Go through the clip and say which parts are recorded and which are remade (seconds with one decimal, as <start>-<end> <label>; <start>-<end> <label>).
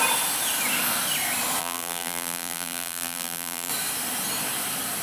0.0-1.6 recorded; 1.6-3.7 remade; 3.7-5.0 recorded